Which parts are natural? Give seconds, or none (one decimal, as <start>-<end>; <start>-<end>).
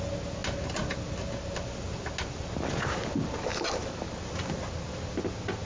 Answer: 0.0-5.6